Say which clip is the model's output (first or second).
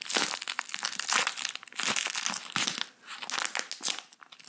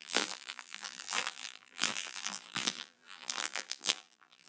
second